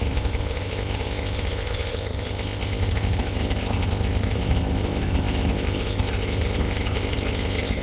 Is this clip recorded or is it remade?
remade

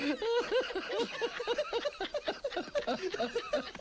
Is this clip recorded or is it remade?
recorded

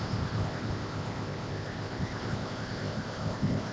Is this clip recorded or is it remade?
remade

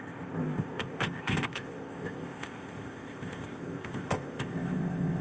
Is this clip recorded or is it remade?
remade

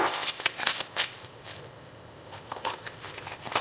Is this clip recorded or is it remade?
remade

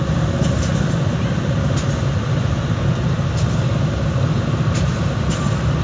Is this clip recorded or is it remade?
recorded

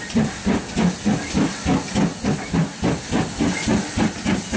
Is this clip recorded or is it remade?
recorded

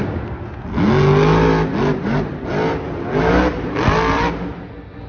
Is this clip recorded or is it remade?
recorded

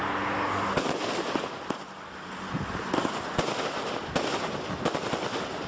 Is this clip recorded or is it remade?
recorded